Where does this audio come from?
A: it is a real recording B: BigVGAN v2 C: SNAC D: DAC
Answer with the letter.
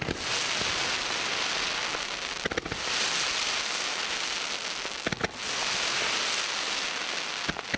A